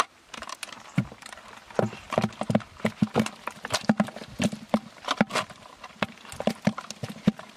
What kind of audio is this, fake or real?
real